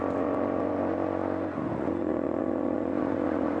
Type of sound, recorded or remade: remade